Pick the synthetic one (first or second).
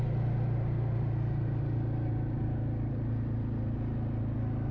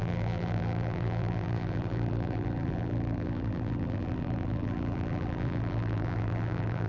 second